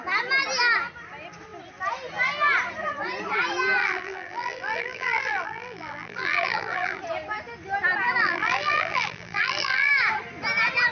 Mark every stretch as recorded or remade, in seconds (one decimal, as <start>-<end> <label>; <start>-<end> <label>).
0.0-3.8 recorded; 3.8-7.0 remade; 7.0-8.2 recorded; 8.2-9.9 remade; 9.9-10.9 recorded

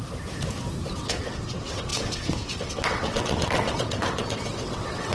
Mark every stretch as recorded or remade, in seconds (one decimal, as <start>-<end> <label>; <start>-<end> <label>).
0.0-0.9 recorded; 0.9-5.1 remade

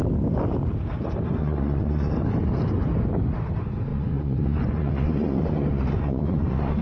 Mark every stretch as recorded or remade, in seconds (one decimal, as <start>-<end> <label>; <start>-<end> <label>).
0.0-1.4 recorded; 1.4-2.1 remade; 2.1-3.9 recorded; 3.9-6.8 remade

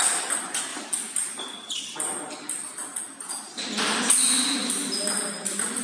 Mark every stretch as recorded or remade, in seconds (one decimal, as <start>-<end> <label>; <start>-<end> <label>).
0.0-5.8 recorded